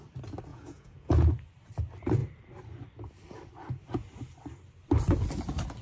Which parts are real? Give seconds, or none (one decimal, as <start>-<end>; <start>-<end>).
0.0-0.5; 1.3-5.8